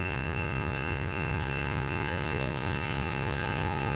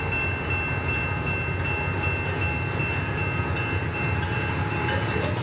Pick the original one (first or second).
second